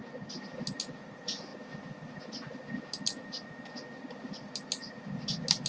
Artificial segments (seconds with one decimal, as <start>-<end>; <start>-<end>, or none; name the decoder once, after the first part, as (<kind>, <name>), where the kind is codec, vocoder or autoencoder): none